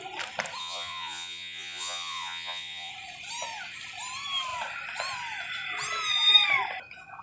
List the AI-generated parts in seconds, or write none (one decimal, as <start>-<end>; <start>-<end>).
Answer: 0.6-2.9